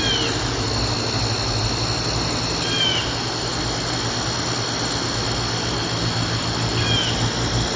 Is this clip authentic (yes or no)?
yes